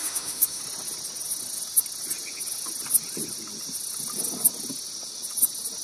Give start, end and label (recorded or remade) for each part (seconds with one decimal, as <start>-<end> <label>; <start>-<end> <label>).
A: 0.0-0.6 remade; 0.6-5.8 recorded